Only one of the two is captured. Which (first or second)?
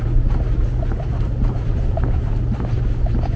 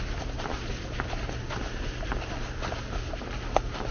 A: second